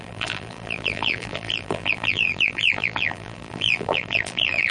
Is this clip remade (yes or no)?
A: yes